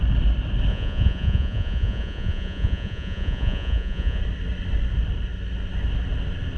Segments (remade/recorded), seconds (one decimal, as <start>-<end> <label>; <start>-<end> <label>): 0.0-0.7 recorded; 0.7-4.2 remade; 4.2-6.6 recorded